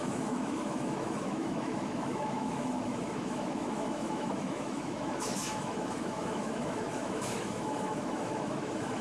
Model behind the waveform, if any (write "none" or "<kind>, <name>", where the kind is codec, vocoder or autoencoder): autoencoder, DAC-VAE